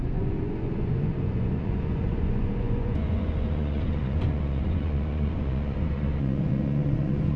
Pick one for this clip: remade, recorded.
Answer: remade